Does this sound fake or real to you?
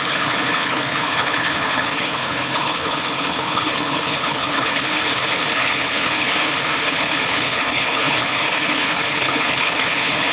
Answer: fake